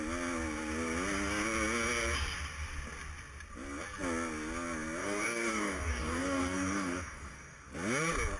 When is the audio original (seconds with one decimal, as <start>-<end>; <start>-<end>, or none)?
0.0-5.0; 7.7-8.4